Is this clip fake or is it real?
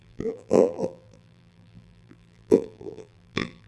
fake